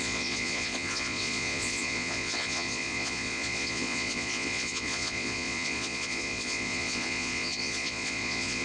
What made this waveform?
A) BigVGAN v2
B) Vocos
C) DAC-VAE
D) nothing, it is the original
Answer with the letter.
B